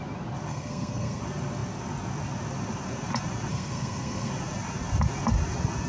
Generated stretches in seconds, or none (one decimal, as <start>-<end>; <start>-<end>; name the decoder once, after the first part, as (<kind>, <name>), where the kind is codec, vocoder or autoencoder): 0.5-1.2 (codec, SNAC); 3.5-4.3